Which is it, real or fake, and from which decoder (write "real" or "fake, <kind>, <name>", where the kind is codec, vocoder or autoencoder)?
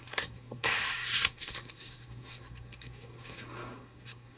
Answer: fake, codec, SNAC